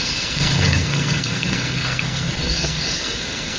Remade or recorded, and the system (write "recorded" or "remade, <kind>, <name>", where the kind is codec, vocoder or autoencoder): remade, codec, SNAC